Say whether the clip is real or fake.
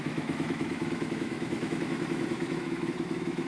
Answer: fake